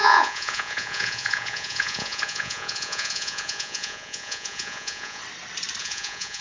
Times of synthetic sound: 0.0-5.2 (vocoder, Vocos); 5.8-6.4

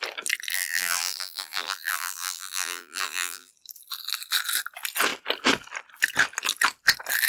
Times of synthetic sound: 0.5-3.5 (vocoder, BigVGAN v2)

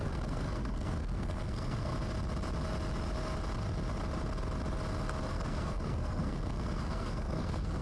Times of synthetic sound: 0.0-1.9 (codec, SNAC); 5.3-7.8

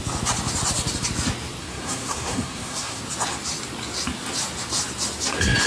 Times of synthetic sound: 1.6-3.0 (codec, SNAC)

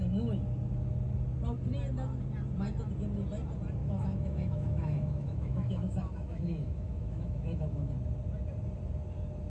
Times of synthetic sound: 3.8-7.9 (autoencoder, DAC-VAE)

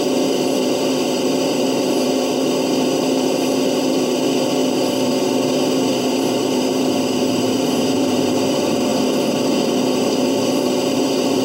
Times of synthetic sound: 0.0-11.4 (vocoder, BigVGAN v2)

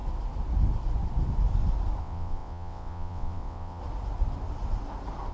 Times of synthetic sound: 2.0-3.8 (vocoder, WaveNeXt)